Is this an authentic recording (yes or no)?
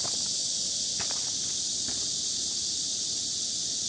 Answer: yes